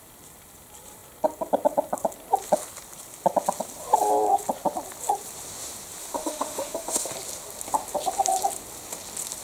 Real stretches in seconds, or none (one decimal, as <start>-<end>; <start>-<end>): 0.0-6.0; 7.1-9.4